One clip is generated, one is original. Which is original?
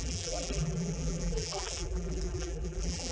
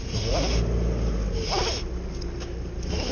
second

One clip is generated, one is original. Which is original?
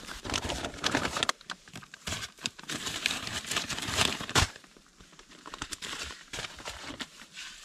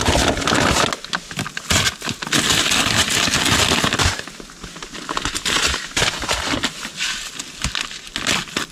second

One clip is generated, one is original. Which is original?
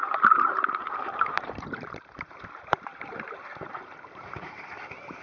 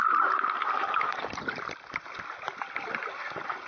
second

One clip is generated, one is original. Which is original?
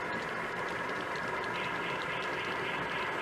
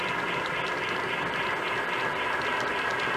second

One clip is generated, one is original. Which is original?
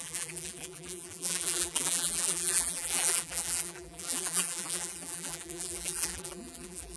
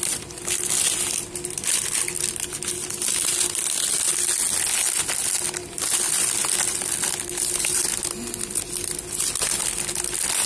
second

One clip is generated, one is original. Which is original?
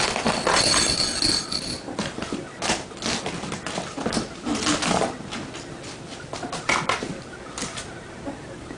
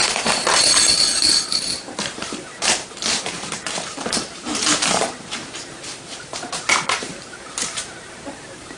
first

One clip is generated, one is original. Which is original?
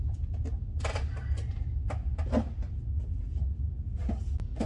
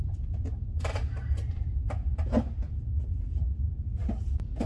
first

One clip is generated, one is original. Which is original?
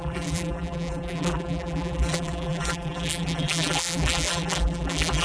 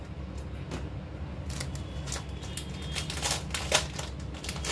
second